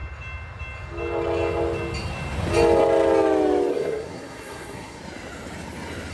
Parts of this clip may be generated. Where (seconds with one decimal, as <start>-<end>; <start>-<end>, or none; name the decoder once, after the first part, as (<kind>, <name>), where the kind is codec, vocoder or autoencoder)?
3.7-5.0 (codec, SNAC)